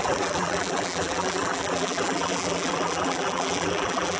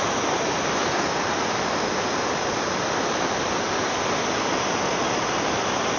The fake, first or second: first